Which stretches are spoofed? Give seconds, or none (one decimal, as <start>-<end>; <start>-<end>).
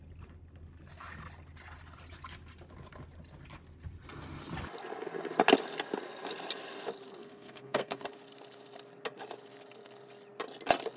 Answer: 7.2-8.1